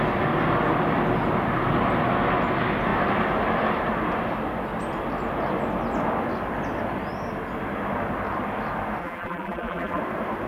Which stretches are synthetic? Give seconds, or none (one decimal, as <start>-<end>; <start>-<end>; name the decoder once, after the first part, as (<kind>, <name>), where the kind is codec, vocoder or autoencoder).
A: 9.0-10.0 (vocoder, BigVGAN v2)

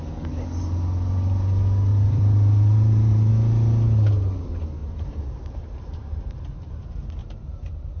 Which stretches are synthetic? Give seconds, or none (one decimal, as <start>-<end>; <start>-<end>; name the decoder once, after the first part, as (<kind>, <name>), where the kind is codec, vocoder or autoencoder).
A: 1.9-3.3 (vocoder, BigVGAN v2); 4.8-5.8; 7.2-8.0

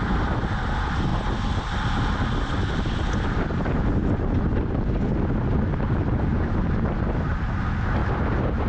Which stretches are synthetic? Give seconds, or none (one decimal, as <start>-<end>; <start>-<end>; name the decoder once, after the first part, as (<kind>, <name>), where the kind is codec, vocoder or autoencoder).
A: 0.0-8.0 (vocoder, BigVGAN v2)